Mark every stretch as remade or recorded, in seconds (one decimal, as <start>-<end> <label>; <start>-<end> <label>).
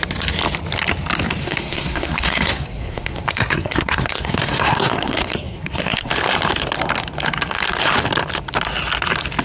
0.0-1.4 recorded; 1.4-6.1 remade; 6.1-9.4 recorded